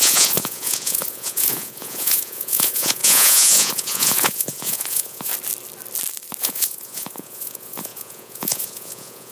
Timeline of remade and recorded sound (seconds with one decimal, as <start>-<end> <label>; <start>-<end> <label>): 0.0-5.3 remade; 5.3-6.4 recorded; 6.4-9.3 remade